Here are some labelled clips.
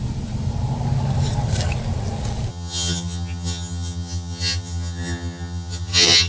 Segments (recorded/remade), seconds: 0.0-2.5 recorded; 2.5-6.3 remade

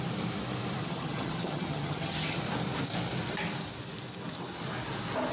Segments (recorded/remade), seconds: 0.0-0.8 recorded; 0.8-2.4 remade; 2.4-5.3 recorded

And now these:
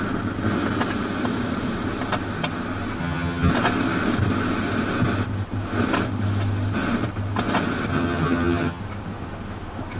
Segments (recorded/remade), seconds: 0.0-3.0 recorded; 3.0-3.5 remade; 3.5-7.9 recorded; 7.9-8.8 remade; 8.8-10.0 recorded

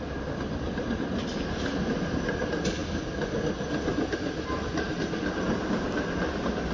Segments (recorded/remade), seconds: 0.0-6.7 recorded